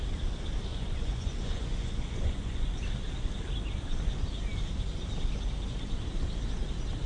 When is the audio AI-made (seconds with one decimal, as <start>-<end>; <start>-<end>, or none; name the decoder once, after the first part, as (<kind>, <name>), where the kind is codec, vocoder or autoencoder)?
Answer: 0.7-2.7 (vocoder, Vocos)